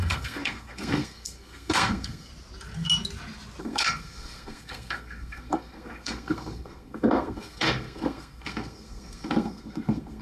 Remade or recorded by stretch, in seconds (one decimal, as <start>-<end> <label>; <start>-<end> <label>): 0.0-2.3 remade; 2.3-3.6 recorded; 3.6-10.2 remade

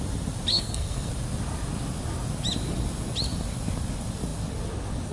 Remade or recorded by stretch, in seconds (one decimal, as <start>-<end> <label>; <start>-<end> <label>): 0.0-0.5 recorded; 0.5-1.1 remade; 1.1-5.1 recorded

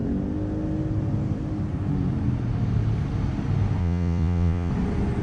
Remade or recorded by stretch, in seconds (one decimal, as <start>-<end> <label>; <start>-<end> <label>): 0.0-3.8 recorded; 3.8-4.7 remade; 4.7-5.2 recorded

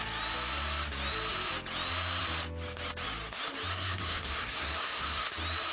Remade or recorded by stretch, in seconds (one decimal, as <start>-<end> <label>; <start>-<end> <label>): 0.0-3.7 recorded; 3.7-5.3 remade; 5.3-5.7 recorded

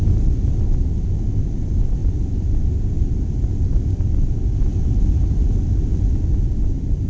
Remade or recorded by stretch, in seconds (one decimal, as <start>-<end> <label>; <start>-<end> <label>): 0.0-7.1 recorded

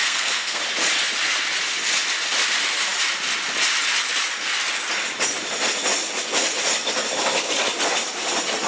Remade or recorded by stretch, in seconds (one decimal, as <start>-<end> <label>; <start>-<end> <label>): 0.0-0.6 remade; 0.6-8.7 recorded